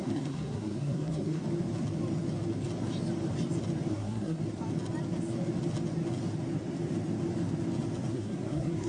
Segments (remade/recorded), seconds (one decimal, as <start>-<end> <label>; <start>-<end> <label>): 0.0-1.4 remade; 1.4-3.9 recorded; 3.9-4.4 remade; 4.4-8.1 recorded; 8.1-8.9 remade